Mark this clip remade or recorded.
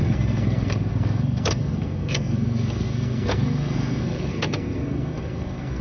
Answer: remade